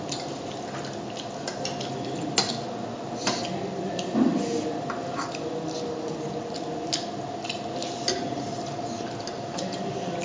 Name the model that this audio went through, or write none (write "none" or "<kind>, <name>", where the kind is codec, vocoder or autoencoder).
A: none